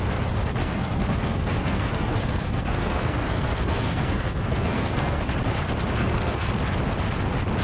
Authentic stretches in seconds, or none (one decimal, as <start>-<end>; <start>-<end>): 0.0-0.6; 5.2-6.0; 6.5-7.6